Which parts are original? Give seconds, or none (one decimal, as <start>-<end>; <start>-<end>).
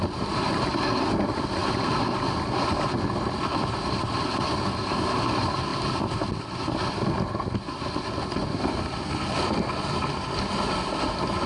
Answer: 0.0-11.5